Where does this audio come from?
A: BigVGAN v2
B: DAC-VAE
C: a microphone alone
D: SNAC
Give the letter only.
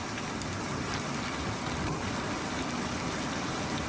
C